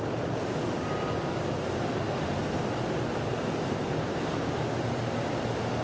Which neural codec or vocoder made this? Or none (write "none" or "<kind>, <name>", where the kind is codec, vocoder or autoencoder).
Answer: none